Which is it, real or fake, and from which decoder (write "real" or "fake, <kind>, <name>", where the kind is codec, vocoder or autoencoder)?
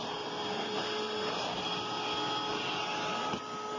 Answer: real